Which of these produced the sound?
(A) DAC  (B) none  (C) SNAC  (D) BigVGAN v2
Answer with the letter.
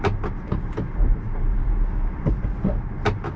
B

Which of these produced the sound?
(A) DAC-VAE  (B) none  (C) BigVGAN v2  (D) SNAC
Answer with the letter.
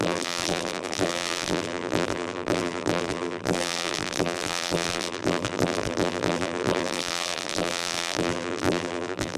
C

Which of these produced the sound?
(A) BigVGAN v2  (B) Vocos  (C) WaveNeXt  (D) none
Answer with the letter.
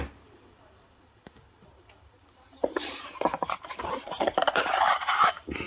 A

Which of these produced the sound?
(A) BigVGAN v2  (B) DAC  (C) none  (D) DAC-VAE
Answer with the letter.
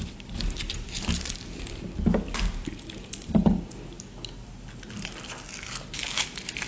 C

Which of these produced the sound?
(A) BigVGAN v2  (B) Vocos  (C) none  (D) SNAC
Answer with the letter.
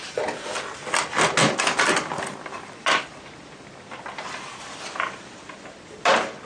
C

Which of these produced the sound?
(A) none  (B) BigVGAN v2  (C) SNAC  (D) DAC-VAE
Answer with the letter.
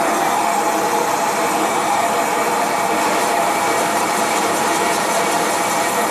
B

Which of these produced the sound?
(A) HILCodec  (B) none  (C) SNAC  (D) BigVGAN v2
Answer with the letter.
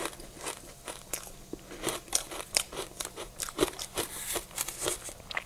D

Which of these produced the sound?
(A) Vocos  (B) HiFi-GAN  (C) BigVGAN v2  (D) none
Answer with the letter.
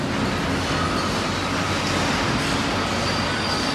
D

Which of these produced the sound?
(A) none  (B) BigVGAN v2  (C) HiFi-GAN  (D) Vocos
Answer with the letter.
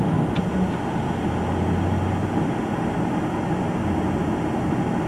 A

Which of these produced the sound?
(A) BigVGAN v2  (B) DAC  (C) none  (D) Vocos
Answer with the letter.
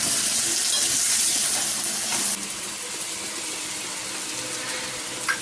C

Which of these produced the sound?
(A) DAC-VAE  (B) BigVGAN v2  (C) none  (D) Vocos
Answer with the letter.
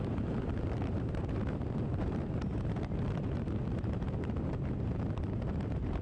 B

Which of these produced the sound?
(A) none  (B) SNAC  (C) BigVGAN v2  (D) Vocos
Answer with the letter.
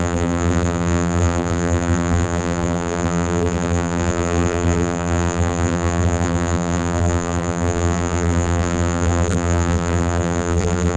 C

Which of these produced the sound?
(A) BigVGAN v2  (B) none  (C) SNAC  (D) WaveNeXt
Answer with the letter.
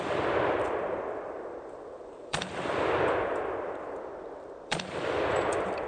A